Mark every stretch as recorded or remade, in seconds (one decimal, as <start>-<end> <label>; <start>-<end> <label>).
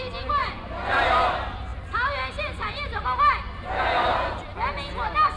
0.0-0.4 recorded; 0.4-1.0 remade; 1.0-5.4 recorded